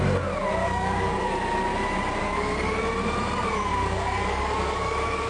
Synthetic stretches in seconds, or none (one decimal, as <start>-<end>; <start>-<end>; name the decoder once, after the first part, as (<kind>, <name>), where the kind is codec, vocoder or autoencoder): 0.6-1.3 (codec, DAC); 2.2-2.8; 3.7-5.3